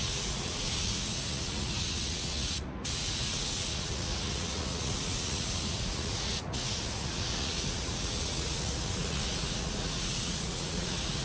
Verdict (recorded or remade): remade